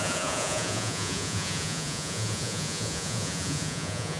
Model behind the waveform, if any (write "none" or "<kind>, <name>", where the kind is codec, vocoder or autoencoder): vocoder, Vocos